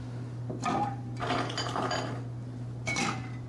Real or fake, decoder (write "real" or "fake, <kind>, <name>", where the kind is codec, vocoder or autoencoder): real